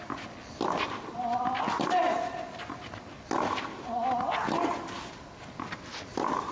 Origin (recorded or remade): recorded